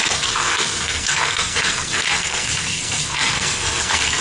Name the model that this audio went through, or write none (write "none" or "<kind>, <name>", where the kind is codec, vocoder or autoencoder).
codec, SNAC